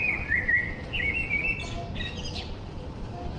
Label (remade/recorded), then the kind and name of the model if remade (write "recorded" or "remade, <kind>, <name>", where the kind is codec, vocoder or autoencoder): recorded